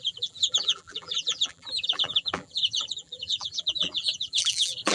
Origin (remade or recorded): remade